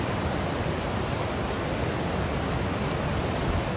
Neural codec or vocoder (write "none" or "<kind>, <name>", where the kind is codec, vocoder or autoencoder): none